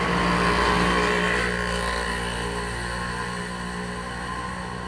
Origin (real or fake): real